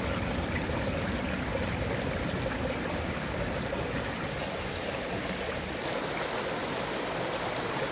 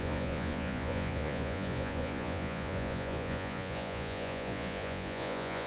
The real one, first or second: first